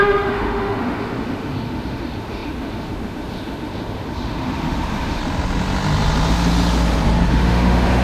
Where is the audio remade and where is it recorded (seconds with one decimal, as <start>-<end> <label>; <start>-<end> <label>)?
0.0-5.2 remade; 5.2-7.3 recorded; 7.3-8.0 remade